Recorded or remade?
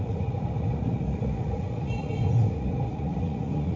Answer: remade